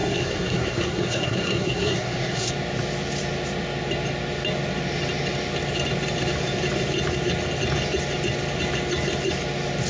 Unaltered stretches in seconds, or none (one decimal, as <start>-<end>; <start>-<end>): 2.5-9.9